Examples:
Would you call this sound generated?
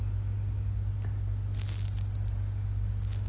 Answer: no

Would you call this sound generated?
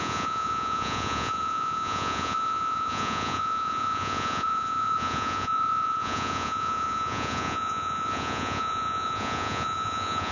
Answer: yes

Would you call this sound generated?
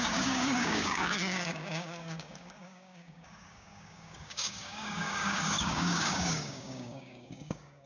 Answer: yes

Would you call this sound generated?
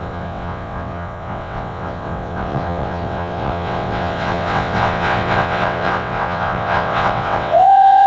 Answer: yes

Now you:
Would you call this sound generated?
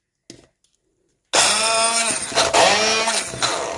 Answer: no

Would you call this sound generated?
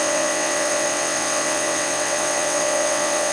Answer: yes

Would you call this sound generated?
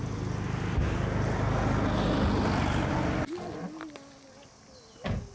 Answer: no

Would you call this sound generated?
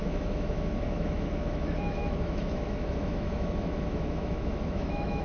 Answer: yes